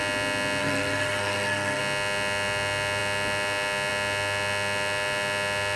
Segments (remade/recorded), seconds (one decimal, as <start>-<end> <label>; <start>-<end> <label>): 0.0-0.6 recorded; 0.6-1.8 remade; 1.8-5.8 recorded

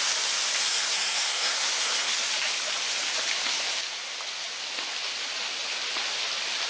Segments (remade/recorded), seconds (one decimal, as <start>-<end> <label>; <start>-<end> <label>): 0.0-0.6 recorded; 0.6-2.2 remade; 2.2-6.7 recorded